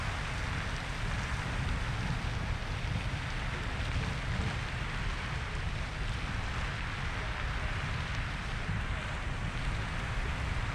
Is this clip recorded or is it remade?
recorded